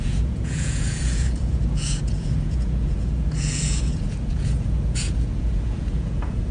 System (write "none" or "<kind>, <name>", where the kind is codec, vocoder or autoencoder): vocoder, Vocos